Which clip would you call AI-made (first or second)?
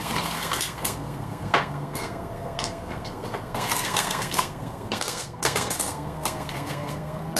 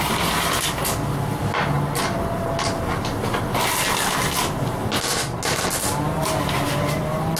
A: first